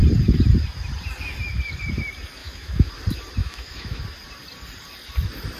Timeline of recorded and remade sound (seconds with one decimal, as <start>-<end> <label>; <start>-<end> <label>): 0.0-2.4 recorded; 2.4-2.9 remade; 2.9-3.4 recorded; 3.4-4.0 remade; 4.0-5.6 recorded